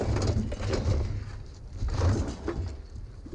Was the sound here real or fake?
real